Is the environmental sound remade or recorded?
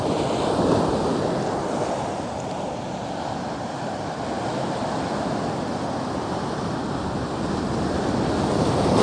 recorded